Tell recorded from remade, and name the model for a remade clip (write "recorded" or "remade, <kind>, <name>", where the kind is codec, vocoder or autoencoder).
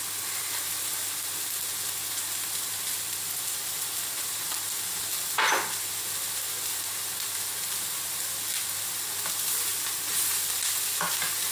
recorded